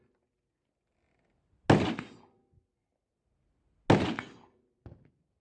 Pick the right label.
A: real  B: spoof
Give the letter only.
A